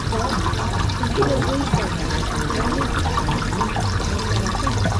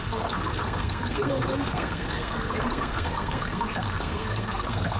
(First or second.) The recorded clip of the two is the first